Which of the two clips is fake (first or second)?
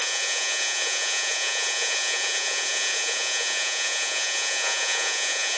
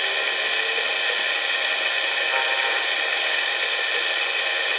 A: first